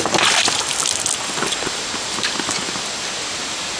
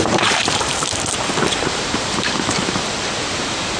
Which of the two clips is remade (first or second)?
second